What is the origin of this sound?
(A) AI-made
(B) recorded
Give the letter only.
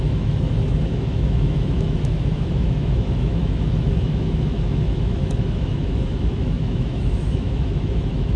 A